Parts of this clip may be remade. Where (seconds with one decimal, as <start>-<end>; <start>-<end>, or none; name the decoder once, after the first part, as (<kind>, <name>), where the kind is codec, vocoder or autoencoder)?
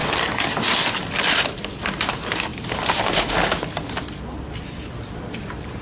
2.1-2.5 (vocoder, BigVGAN v2); 3.9-5.8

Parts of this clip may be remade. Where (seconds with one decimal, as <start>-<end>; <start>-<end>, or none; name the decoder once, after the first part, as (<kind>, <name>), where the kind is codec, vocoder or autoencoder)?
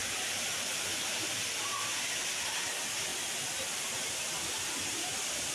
0.0-2.7 (vocoder, BigVGAN v2)